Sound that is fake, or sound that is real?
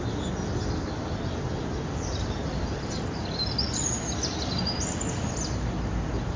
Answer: real